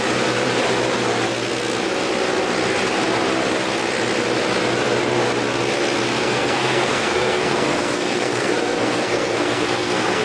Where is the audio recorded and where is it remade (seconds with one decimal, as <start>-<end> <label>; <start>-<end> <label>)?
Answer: 0.0-6.2 recorded; 6.2-10.2 remade

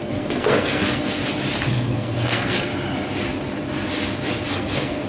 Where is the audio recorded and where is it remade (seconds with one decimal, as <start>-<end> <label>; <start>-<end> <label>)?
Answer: 0.0-1.2 remade; 1.2-1.7 recorded; 1.7-2.7 remade; 2.7-4.5 recorded; 4.5-5.1 remade